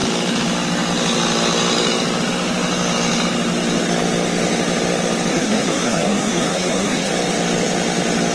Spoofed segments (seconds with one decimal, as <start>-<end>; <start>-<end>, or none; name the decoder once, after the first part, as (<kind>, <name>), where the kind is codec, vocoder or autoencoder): 5.3-7.1 (codec, SNAC)